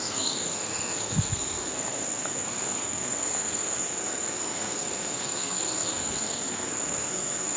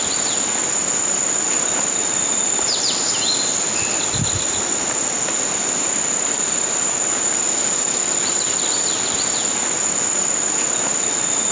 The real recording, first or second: second